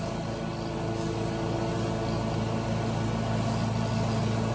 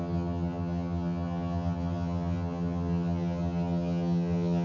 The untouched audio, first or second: first